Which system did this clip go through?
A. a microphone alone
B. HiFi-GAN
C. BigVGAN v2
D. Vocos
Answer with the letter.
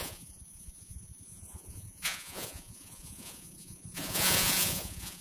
D